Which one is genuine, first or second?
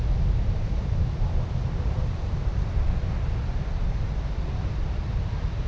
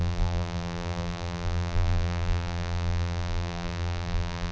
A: first